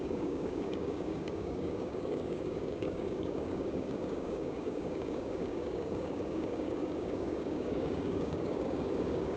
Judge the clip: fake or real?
fake